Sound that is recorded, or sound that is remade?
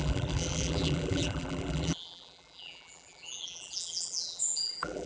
remade